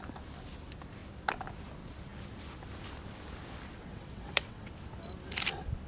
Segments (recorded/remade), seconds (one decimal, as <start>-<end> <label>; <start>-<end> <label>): 0.0-3.9 recorded; 3.9-4.7 remade; 4.7-5.9 recorded